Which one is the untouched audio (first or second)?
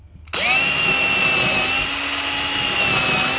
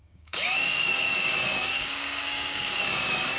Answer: first